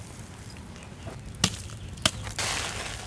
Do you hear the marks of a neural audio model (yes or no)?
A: no